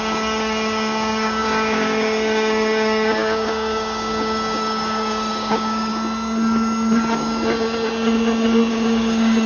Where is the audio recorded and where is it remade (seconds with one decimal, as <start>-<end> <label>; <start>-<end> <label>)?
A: 0.0-5.9 remade; 5.9-8.7 recorded; 8.7-9.5 remade